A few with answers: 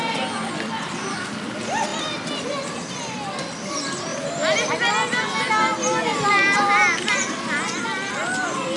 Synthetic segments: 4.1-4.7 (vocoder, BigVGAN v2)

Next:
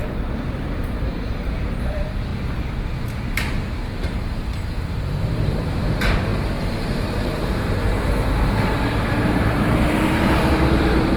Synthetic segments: 0.0-2.3 (vocoder, BigVGAN v2); 3.2-11.2

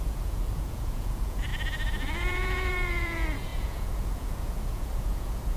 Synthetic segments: 0.0-5.6 (vocoder, Vocos)